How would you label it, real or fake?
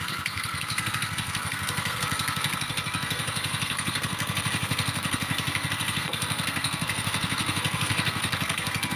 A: fake